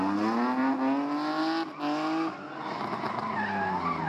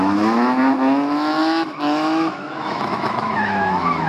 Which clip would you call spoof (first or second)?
second